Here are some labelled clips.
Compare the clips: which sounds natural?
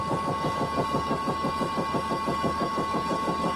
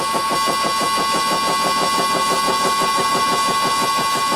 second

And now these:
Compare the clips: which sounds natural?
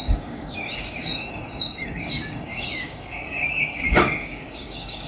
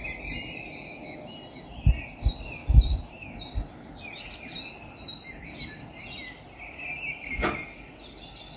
second